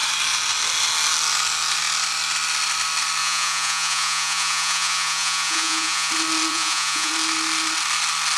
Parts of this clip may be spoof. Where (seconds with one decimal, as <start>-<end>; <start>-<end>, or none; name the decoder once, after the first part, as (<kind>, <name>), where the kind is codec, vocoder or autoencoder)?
3.2-6.1 (vocoder, Vocos); 6.5-7.1